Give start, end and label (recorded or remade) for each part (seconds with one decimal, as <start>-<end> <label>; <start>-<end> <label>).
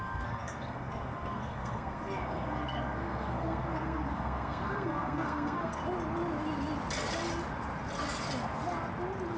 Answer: 0.0-5.8 remade; 5.8-9.4 recorded